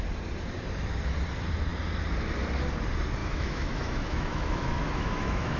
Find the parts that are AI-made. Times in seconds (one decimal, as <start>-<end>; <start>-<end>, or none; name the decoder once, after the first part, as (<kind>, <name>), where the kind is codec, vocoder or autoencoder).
3.2-5.6 (autoencoder, DAC-VAE)